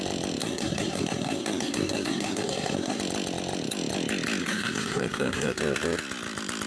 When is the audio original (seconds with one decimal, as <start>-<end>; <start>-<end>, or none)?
0.0-0.4; 3.0-4.4; 5.6-6.7